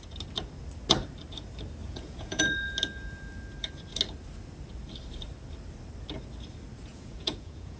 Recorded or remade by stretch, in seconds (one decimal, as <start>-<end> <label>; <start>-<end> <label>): 0.0-1.8 recorded; 1.8-2.4 remade; 2.4-6.9 recorded; 6.9-7.8 remade